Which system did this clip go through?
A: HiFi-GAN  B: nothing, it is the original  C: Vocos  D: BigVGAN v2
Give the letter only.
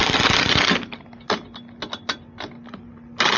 B